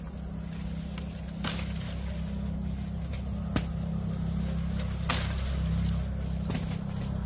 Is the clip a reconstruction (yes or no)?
no